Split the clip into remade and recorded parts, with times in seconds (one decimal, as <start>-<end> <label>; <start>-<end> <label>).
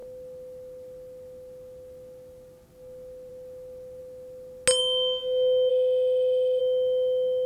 0.0-5.7 recorded; 5.7-6.6 remade; 6.6-7.5 recorded